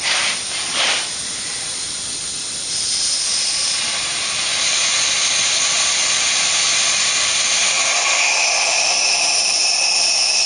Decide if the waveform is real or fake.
fake